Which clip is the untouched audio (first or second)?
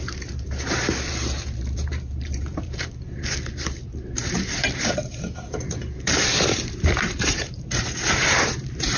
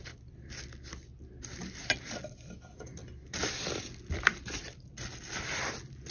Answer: second